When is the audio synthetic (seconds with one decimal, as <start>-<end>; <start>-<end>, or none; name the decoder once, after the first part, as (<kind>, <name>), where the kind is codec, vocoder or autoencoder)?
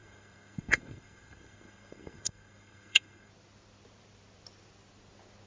0.0-3.3 (codec, SNAC)